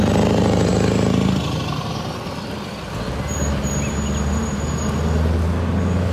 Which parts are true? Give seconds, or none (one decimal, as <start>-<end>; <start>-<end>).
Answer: 0.0-6.1